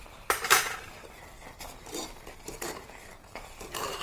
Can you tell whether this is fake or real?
fake